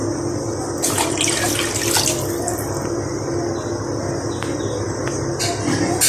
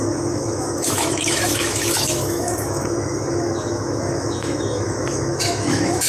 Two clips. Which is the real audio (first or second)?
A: first